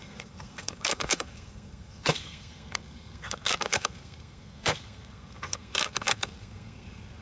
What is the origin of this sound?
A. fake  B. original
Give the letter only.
A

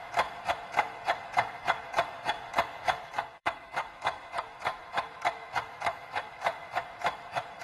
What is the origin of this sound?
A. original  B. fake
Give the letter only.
B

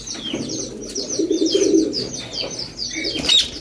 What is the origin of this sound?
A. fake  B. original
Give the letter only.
B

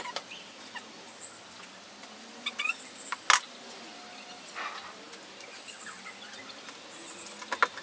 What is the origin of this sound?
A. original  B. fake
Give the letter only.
A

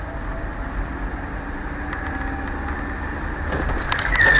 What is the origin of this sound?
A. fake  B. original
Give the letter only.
B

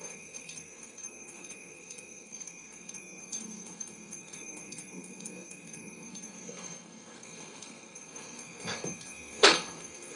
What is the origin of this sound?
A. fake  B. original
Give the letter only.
A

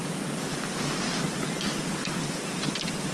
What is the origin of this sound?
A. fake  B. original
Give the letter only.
B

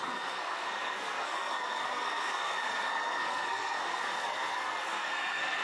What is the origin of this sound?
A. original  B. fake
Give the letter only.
B